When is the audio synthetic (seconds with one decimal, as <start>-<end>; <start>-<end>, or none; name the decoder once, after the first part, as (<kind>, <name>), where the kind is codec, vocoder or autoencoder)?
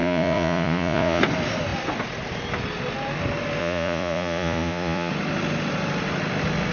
0.0-1.2 (vocoder, Vocos); 3.6-5.1